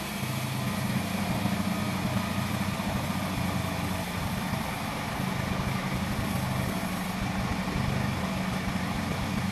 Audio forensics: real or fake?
real